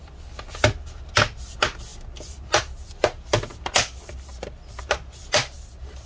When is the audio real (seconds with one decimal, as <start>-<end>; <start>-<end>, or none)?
0.0-6.1